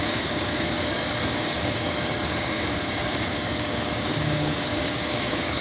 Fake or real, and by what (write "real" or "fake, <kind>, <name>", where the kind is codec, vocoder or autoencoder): fake, codec, DAC